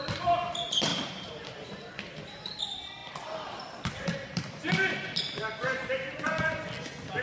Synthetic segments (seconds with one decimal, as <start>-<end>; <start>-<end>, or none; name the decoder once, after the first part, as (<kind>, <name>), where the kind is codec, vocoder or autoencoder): 0.9-2.6 (vocoder, BigVGAN v2)